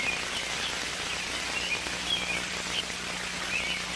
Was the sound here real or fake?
real